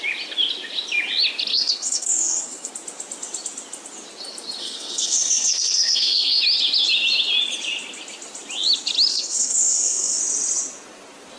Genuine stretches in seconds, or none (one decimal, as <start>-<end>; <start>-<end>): 0.0-1.5; 2.7-4.6; 6.4-9.1; 10.2-11.4